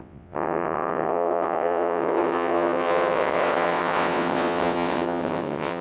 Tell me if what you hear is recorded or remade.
remade